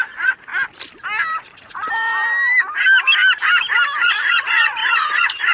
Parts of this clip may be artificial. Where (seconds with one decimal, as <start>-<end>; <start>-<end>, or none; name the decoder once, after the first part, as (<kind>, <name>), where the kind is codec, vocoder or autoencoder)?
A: 0.0-0.5 (vocoder, Vocos); 1.4-1.8; 4.0-5.5